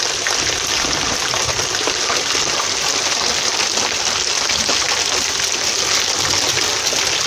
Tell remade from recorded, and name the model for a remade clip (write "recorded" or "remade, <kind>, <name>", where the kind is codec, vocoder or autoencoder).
recorded